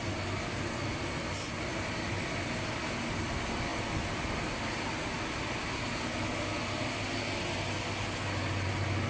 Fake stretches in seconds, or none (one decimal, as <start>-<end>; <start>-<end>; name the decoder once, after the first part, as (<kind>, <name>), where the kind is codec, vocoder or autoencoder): none